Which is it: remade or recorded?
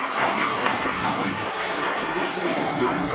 remade